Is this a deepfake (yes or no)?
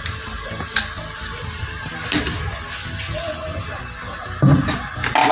no